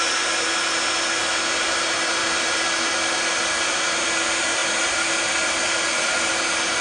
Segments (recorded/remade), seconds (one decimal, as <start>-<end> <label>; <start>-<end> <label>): 0.0-6.8 recorded